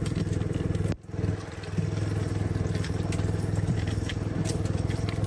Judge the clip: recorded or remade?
recorded